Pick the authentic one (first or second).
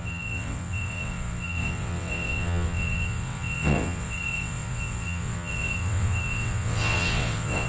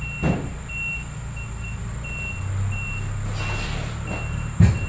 second